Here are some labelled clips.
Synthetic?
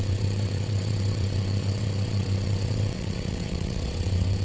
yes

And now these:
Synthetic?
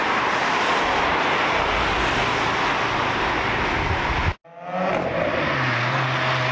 no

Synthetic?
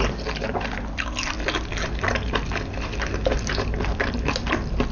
no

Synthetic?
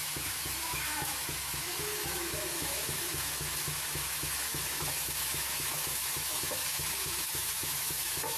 yes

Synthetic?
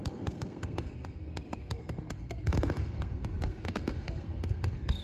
yes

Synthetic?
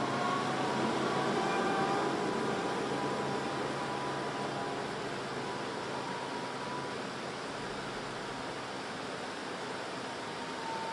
no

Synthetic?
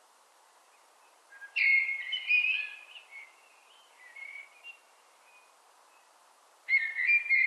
yes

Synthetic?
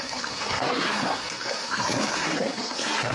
yes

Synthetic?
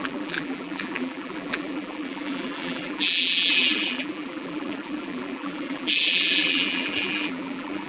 yes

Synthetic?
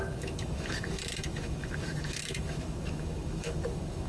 yes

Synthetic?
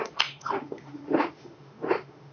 yes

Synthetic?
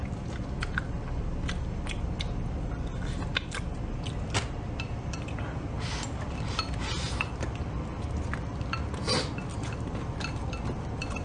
no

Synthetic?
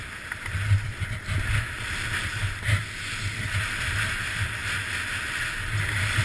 no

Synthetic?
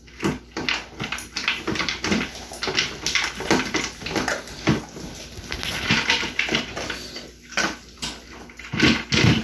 no